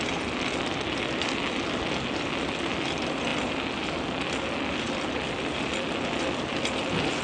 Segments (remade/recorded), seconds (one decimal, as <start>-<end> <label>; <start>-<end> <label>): 0.0-7.2 recorded